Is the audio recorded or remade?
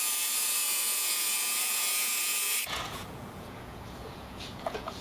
remade